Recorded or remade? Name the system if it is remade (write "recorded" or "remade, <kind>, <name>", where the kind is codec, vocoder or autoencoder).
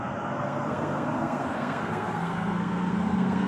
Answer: remade, codec, SNAC